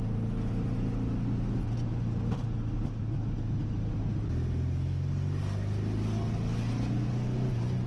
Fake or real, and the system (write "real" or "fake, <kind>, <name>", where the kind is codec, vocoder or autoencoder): real